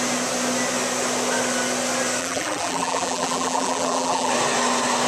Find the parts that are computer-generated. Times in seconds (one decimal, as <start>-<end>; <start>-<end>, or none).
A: 2.2-4.3